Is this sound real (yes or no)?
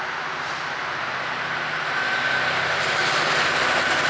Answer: yes